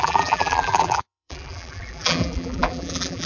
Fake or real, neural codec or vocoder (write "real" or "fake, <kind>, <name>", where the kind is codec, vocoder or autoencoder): fake, vocoder, BigVGAN v2